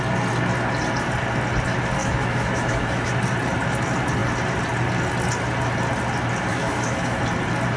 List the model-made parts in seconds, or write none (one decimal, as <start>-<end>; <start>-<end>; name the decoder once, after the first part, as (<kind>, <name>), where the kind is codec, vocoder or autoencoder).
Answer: 2.0-3.1 (autoencoder, DAC-VAE); 6.5-7.2